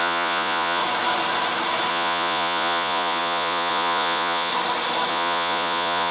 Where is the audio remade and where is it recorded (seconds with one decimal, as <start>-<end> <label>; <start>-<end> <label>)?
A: 0.0-0.8 remade; 0.8-1.9 recorded; 1.9-4.5 remade; 4.5-5.1 recorded; 5.1-6.1 remade